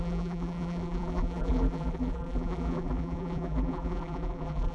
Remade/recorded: remade